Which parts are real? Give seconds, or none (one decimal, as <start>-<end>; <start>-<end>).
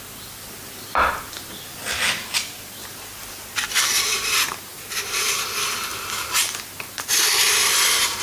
0.0-4.7; 5.3-5.9; 6.6-8.2